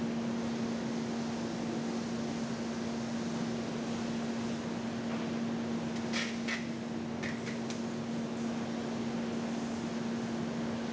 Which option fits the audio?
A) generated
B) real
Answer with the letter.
B